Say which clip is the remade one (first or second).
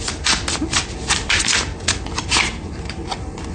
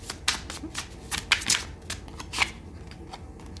first